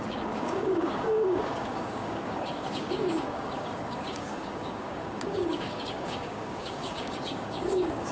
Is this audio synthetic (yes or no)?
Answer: yes